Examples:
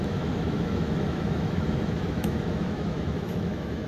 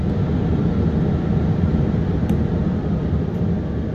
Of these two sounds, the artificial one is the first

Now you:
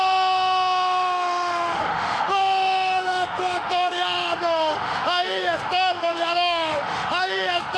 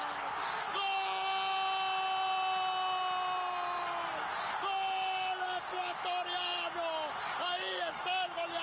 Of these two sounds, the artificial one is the first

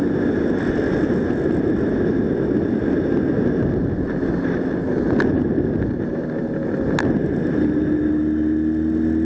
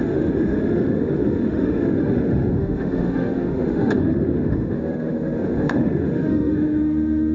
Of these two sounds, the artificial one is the second